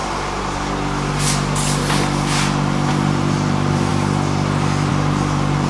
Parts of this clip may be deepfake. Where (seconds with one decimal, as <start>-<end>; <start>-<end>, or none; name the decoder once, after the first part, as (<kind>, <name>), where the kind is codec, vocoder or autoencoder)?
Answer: 2.9-3.9 (vocoder, BigVGAN v2); 4.9-5.7